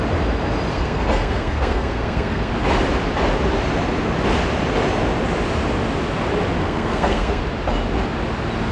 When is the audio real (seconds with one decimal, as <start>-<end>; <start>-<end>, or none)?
0.0-0.7; 2.5-6.6; 7.4-8.7